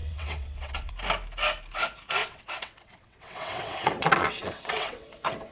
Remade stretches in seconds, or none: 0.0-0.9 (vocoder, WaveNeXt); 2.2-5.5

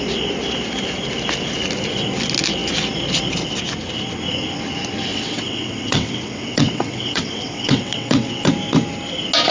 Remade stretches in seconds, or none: 5.1-8.5 (vocoder, WaveNeXt)

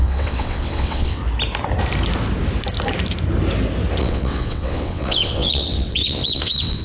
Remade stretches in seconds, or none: 0.0-1.2 (vocoder, WaveNeXt); 4.0-6.8

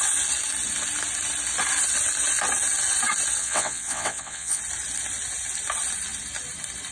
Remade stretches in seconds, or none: 3.4-4.6 (vocoder, WaveNeXt)